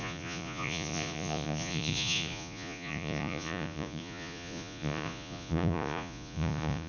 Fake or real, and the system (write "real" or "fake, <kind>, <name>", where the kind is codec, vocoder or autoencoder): fake, vocoder, Vocos